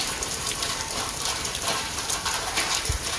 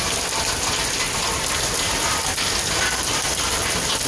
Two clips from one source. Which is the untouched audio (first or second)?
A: second